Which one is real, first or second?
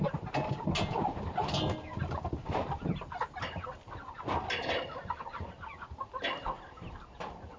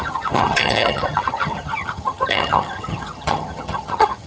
first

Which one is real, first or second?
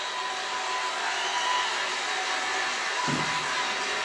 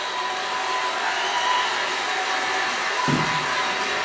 first